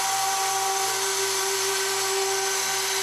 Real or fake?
real